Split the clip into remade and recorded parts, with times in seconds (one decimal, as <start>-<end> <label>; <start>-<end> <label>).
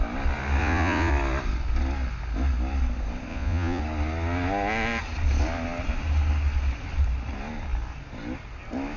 0.0-0.6 recorded; 0.6-1.1 remade; 1.1-3.3 recorded; 3.3-3.8 remade; 3.8-9.0 recorded